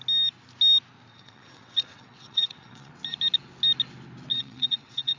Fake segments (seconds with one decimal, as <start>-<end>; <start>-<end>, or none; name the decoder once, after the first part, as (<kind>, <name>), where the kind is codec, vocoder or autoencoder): 1.1-2.9 (vocoder, WaveNeXt); 4.3-5.2